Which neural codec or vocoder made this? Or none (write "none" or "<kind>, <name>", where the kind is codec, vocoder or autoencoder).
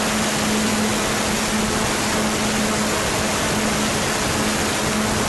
none